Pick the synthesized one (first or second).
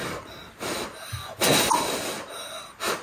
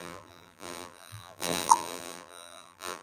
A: second